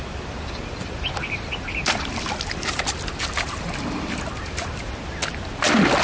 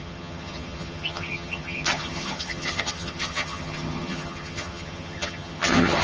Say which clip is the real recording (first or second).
first